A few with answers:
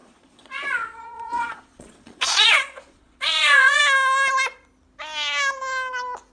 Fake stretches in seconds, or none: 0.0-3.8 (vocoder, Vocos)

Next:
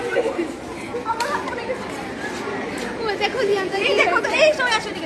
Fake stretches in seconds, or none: 3.5-4.2 (vocoder, Vocos)

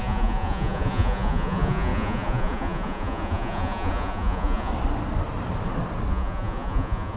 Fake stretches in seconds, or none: 0.0-4.7 (vocoder, Vocos); 6.1-7.2

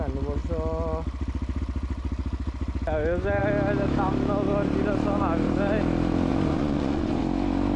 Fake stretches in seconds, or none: 6.3-7.2 (vocoder, Vocos)

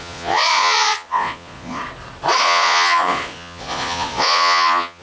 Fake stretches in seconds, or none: 0.0-1.8 (vocoder, Vocos); 2.4-5.0

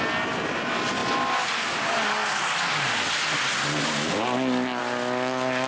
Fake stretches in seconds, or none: none

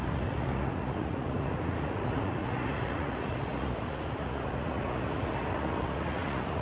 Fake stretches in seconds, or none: 0.0-6.6 (vocoder, Vocos)

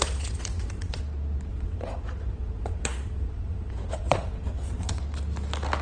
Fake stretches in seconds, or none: 0.0-1.0 (vocoder, Vocos); 1.5-5.0